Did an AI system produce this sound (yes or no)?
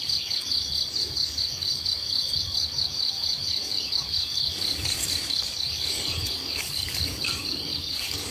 yes